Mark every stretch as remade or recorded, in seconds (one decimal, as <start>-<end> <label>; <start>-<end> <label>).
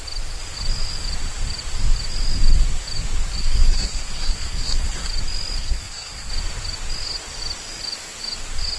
0.0-3.4 recorded; 3.4-5.1 remade; 5.1-5.6 recorded; 5.6-6.3 remade; 6.3-8.8 recorded